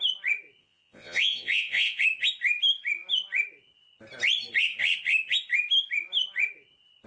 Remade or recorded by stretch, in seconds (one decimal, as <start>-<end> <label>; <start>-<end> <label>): 0.0-0.6 recorded; 0.6-2.0 remade; 2.0-7.1 recorded